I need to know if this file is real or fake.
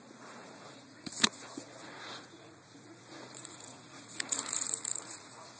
fake